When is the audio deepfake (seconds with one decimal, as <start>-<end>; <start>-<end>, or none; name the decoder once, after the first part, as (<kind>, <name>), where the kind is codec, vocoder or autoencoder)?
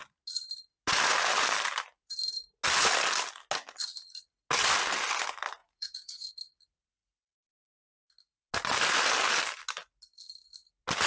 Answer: 5.6-6.3 (vocoder, Vocos)